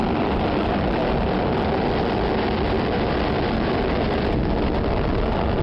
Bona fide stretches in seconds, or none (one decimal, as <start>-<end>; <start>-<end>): 0.0-5.6